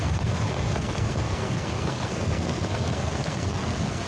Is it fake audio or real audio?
fake